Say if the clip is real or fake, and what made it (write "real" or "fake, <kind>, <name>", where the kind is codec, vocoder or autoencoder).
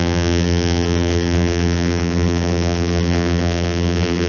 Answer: fake, vocoder, BigVGAN v2